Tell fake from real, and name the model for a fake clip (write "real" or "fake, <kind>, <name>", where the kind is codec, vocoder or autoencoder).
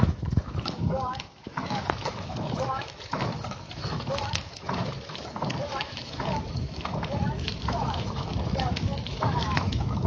fake, autoencoder, DAC-VAE